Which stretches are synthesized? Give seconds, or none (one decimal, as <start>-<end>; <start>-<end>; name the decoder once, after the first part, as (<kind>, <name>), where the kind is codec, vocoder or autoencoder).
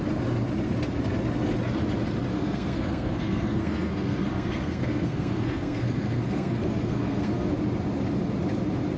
2.3-7.5 (codec, SNAC)